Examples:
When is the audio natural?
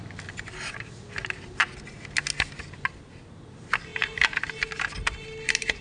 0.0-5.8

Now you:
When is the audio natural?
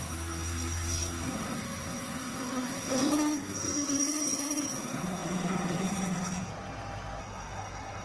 6.5-7.2